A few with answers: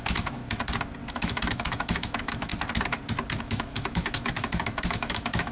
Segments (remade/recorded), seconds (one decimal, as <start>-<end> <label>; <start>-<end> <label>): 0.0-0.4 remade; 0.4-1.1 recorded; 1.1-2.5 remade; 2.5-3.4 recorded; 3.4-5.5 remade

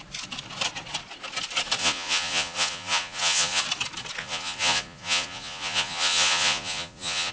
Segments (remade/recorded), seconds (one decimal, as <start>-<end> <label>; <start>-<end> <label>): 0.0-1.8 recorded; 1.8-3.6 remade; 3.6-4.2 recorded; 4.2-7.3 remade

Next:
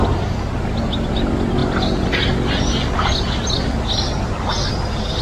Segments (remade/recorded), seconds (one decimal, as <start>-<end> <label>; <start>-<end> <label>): 0.0-5.2 recorded

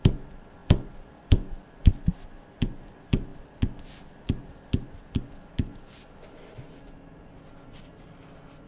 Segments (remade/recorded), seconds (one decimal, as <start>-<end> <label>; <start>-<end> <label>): 0.0-3.3 remade; 3.3-4.5 recorded; 4.5-5.7 remade; 5.7-6.8 recorded; 6.8-8.7 remade

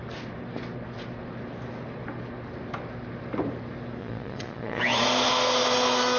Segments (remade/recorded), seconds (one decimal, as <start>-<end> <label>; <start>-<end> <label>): 0.0-4.0 recorded; 4.0-4.8 remade; 4.8-6.2 recorded

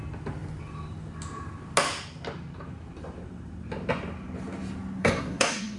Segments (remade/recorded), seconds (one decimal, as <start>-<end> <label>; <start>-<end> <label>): 0.0-5.0 recorded; 5.0-5.8 remade

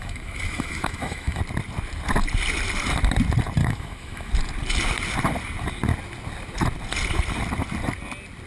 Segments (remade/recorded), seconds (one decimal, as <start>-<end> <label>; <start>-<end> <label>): 0.0-1.4 remade; 1.4-3.6 recorded; 3.6-4.3 remade; 4.3-8.5 recorded

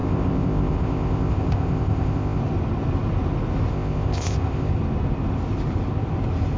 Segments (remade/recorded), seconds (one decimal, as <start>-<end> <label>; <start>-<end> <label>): 0.0-2.4 remade; 2.4-3.7 recorded; 3.7-4.7 remade; 4.7-6.6 recorded